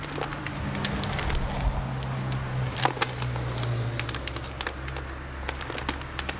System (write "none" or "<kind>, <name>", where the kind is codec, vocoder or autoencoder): none